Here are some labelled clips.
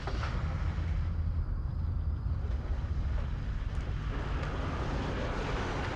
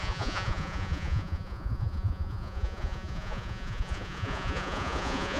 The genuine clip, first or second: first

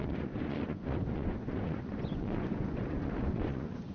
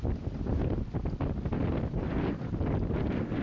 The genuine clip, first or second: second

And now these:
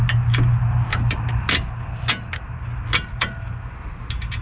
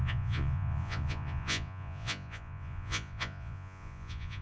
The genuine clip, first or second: first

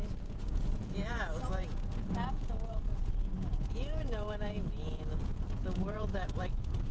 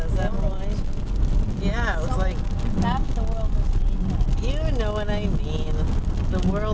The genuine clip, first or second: second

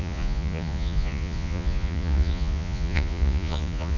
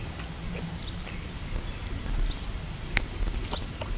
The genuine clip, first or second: second